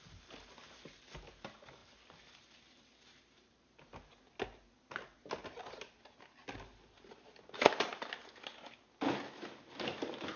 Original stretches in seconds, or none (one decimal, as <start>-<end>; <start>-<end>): 0.0-10.4